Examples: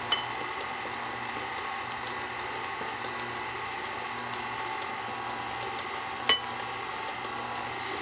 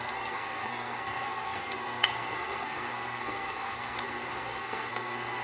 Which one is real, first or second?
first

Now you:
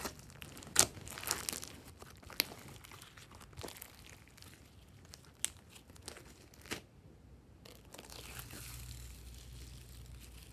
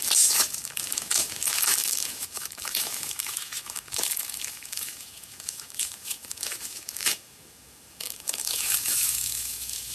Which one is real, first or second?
first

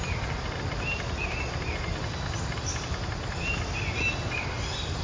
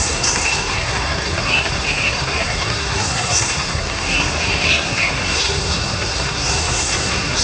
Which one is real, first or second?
first